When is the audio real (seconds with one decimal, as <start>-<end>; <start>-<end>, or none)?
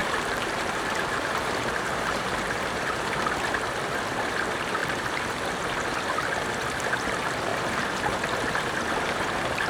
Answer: 3.2-4.8; 5.6-9.7